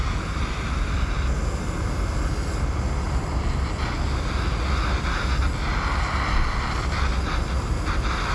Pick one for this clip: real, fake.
real